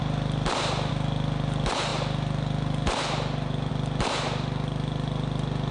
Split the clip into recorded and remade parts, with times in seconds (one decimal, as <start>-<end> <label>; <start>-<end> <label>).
0.0-5.7 recorded